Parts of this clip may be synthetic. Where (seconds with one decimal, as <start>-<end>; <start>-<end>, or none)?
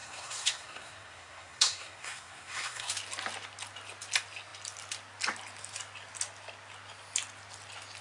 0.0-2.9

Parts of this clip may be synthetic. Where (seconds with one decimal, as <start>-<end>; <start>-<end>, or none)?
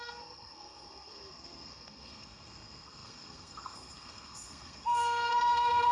0.0-5.9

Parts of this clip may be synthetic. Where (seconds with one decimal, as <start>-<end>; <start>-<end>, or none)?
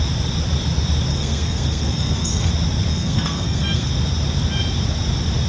1.1-2.5; 2.9-3.9